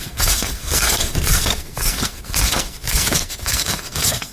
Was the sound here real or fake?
fake